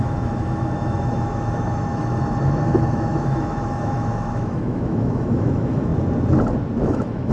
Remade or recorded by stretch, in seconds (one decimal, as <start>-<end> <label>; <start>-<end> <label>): 0.0-5.9 remade; 5.9-6.8 recorded; 6.8-7.3 remade